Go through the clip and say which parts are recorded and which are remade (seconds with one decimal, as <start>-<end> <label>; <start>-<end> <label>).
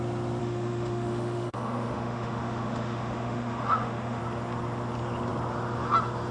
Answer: 0.0-0.4 recorded; 0.4-4.2 remade; 4.2-6.3 recorded